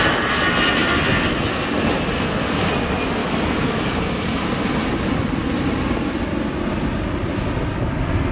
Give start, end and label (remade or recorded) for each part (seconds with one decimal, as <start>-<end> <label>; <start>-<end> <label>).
0.0-3.2 recorded; 3.2-3.8 remade; 3.8-8.3 recorded